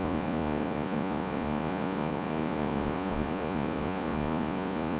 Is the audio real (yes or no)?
no